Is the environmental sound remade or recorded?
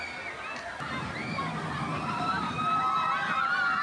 recorded